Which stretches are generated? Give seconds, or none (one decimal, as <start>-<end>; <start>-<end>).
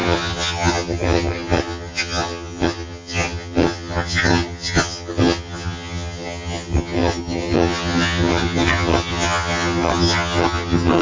0.0-11.0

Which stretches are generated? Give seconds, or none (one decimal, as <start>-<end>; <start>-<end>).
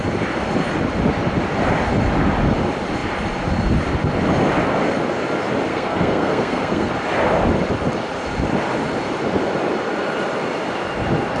5.7-6.9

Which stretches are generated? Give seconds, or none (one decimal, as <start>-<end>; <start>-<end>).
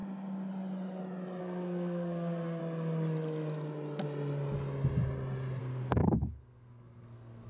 1.4-2.6; 5.6-7.5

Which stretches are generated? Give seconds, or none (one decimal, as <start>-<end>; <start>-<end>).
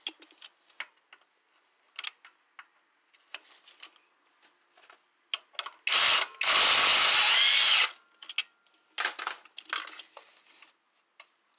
none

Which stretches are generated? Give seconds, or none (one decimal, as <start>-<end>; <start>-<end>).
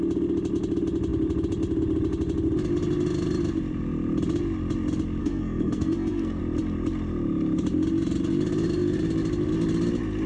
5.2-6.4